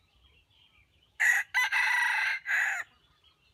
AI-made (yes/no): no